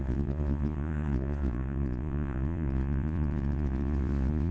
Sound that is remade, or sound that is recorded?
remade